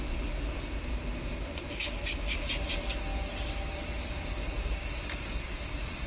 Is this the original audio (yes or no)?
yes